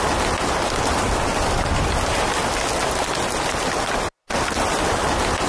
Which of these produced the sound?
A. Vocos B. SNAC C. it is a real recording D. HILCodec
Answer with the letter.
C